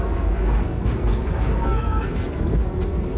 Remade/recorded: remade